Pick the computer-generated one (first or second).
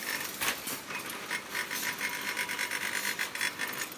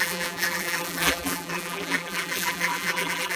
second